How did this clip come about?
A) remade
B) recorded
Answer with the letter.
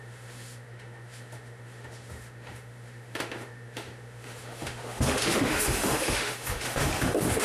A